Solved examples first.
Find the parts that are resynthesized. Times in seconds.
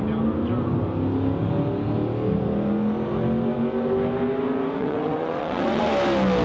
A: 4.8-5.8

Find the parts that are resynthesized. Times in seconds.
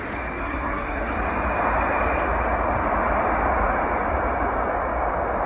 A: 0.4-1.1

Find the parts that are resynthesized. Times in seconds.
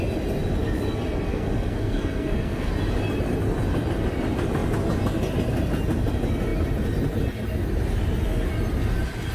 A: 1.3-2.7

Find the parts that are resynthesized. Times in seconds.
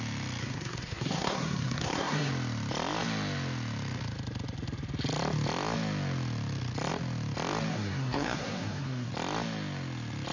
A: 0.4-2.3; 7.7-9.1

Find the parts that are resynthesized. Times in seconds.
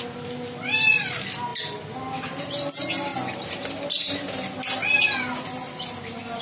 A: none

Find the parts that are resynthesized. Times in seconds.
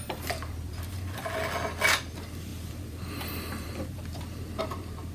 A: 0.0-1.4; 2.1-5.1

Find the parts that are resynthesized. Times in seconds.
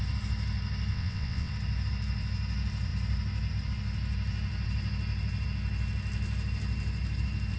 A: 0.9-1.5